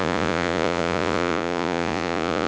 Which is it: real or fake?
fake